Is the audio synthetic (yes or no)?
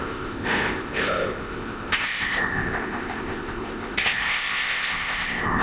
yes